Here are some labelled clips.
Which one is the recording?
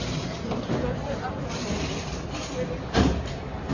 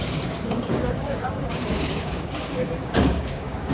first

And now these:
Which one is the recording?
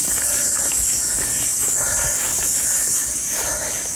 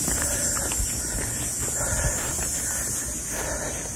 second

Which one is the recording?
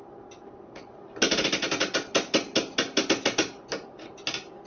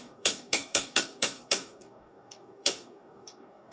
first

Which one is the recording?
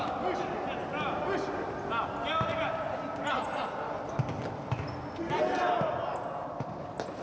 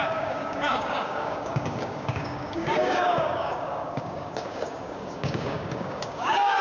first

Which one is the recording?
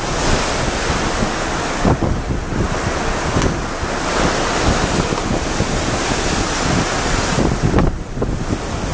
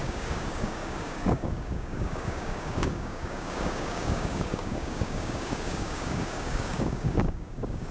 first